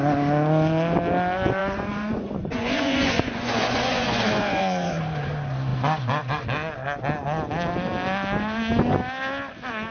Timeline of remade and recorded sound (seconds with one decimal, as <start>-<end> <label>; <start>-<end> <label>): 0.0-1.6 recorded; 1.6-5.0 remade; 5.0-9.9 recorded